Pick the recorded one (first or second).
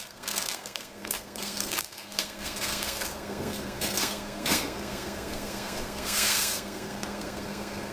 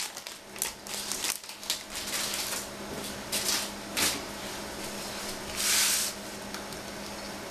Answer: second